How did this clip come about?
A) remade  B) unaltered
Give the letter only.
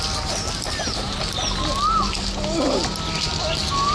B